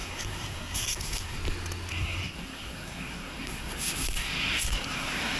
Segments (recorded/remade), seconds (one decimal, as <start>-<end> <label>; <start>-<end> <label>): 0.0-1.4 remade; 1.4-1.9 recorded; 1.9-5.4 remade